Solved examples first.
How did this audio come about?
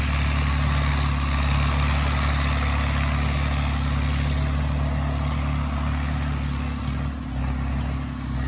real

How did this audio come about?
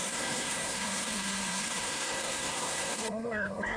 fake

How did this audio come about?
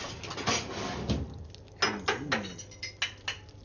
real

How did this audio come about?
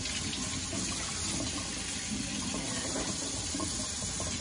real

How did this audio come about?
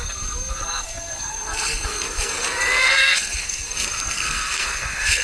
fake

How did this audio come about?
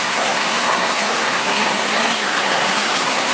fake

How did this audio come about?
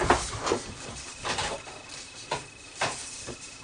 real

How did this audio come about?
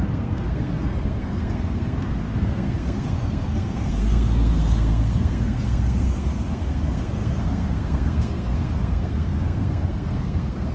fake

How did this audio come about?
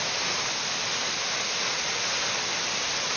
real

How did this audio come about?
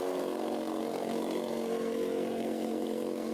fake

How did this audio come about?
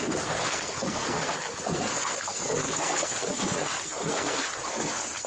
fake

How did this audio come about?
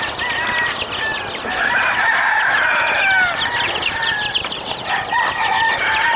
real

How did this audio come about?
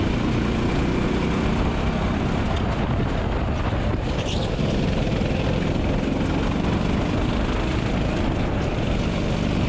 real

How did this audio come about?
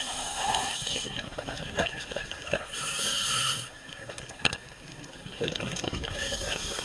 fake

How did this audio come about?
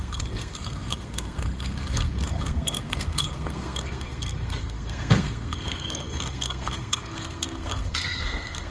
fake